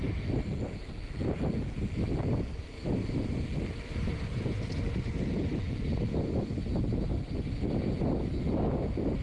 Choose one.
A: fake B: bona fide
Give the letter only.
B